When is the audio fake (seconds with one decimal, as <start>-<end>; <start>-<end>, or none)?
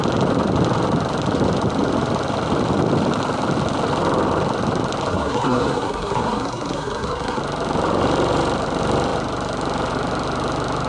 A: 5.1-7.4